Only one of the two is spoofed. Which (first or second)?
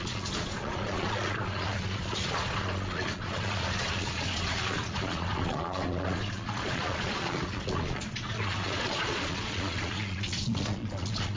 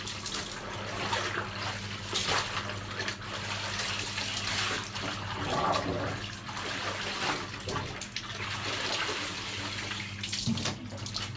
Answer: first